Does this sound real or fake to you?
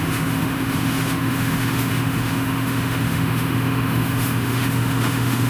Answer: fake